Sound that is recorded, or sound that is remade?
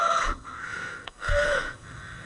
remade